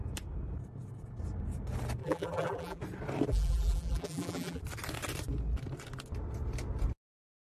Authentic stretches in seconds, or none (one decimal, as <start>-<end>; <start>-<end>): 0.0-2.0; 2.8-3.3; 4.6-7.5